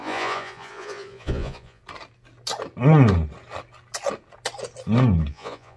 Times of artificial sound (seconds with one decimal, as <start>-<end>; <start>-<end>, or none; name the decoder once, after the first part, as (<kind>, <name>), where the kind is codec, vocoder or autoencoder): 0.0-1.8 (vocoder, Vocos); 5.3-5.8